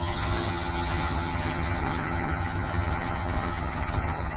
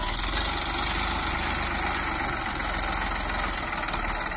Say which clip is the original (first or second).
second